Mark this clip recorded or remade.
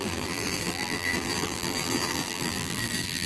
remade